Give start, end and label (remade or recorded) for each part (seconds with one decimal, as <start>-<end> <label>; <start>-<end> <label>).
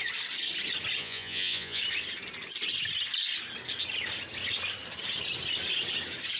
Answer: 0.0-1.0 recorded; 1.0-1.8 remade; 1.8-6.4 recorded